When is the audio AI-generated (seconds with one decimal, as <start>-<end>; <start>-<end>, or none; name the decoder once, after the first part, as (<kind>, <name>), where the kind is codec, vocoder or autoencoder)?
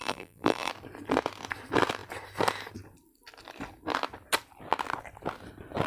0.0-0.7 (vocoder, BigVGAN v2)